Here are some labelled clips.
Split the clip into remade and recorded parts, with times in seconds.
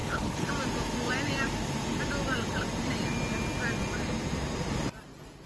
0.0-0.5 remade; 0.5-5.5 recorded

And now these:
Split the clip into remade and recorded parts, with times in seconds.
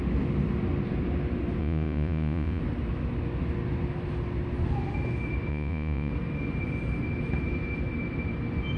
0.0-1.6 recorded; 1.6-2.6 remade; 2.6-5.5 recorded; 5.5-6.1 remade; 6.1-8.8 recorded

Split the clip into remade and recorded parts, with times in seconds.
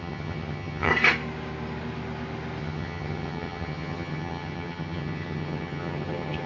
0.0-0.9 remade; 0.9-2.6 recorded; 2.6-6.5 remade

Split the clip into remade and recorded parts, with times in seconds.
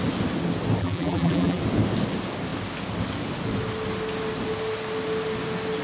0.0-0.8 recorded; 0.8-1.6 remade; 1.6-5.8 recorded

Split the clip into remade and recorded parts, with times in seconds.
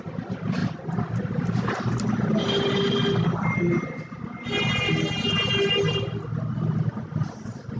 0.0-7.8 recorded